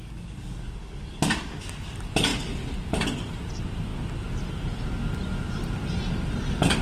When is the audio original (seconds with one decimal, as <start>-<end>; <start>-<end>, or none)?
1.6-6.8